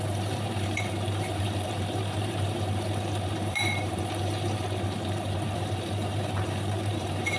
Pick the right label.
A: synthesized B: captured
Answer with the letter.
A